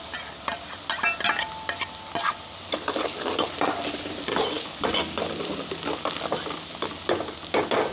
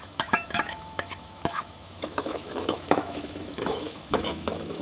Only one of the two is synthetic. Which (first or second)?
second